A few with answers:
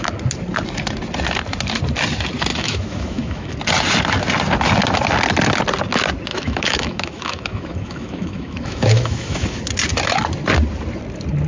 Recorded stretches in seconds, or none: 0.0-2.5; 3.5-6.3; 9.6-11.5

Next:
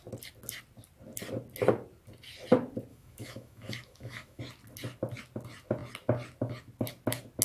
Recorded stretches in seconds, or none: 0.0-2.9; 4.4-7.4

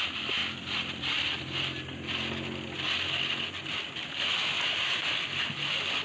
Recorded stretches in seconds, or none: 0.0-6.0

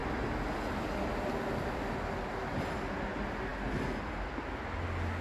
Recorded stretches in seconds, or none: 0.0-5.2

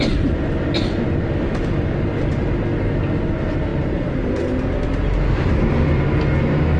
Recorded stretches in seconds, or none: 0.0-6.8

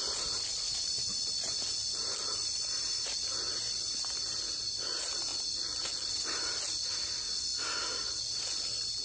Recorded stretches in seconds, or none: 0.0-9.0

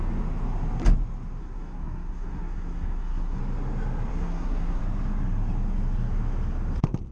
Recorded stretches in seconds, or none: 0.0-1.4; 3.4-4.1; 4.8-7.1